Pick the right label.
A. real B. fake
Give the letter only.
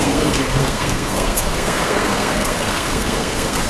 B